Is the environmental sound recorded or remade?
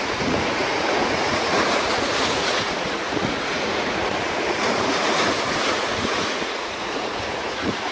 remade